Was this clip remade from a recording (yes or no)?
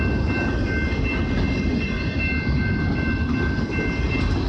no